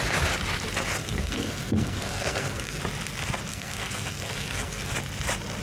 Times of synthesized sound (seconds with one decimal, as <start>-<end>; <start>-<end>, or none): 1.0-2.8; 3.5-4.9

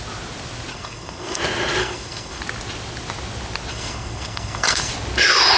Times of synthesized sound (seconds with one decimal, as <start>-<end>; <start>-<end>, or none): 0.7-1.4; 1.8-2.4; 3.7-4.9

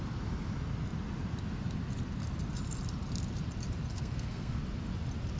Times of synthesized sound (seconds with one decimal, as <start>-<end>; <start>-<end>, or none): 3.9-4.6

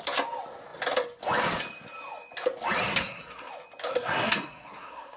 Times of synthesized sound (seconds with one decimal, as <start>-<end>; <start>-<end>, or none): 2.8-3.5; 3.9-5.2

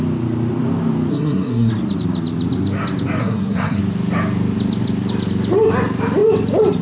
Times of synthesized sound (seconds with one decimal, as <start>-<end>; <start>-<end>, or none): 1.1-1.7; 3.2-3.8

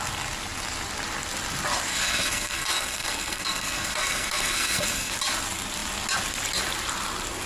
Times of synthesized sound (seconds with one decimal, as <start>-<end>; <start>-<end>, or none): 1.9-5.1

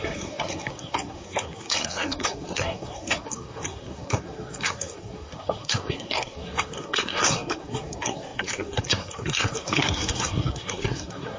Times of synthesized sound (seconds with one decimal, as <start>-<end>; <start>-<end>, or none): 0.0-11.4